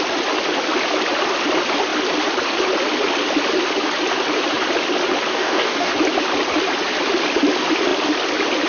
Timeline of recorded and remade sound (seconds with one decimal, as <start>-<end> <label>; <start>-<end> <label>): 0.0-5.3 recorded; 5.3-5.9 remade; 5.9-8.7 recorded